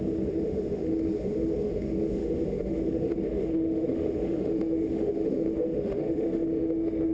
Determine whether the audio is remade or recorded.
remade